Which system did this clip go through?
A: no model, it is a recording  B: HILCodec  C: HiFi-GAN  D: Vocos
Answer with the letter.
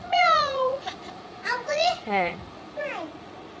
D